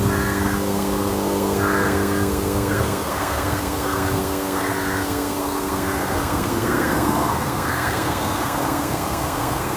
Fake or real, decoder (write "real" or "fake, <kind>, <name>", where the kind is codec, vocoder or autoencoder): fake, codec, SNAC